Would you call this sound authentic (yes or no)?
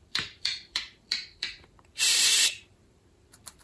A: no